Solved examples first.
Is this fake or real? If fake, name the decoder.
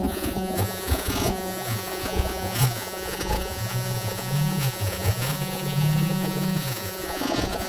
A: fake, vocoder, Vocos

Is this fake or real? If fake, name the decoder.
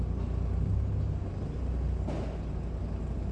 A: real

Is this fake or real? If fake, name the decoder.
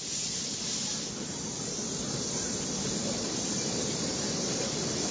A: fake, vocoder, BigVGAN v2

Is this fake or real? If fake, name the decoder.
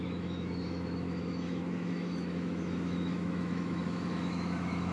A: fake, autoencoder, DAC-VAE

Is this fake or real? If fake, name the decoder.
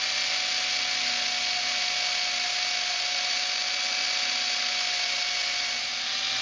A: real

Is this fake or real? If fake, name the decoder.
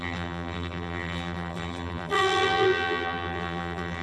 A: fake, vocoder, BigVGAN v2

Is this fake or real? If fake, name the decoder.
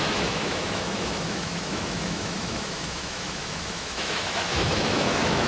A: fake, autoencoder, DAC-VAE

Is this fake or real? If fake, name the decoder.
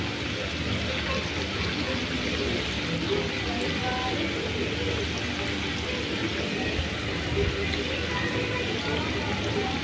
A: real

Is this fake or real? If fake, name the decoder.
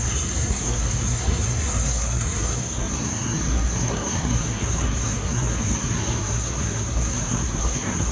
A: fake, codec, SNAC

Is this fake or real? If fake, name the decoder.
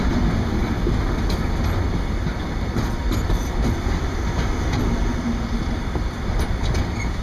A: real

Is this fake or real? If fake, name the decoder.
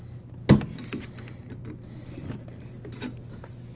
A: real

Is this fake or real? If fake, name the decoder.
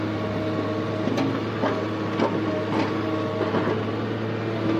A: real